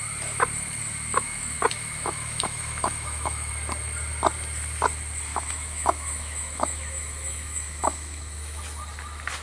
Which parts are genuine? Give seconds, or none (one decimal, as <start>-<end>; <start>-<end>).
0.0-1.1; 3.5-5.3; 8.6-9.4